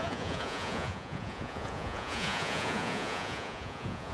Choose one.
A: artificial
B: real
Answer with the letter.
A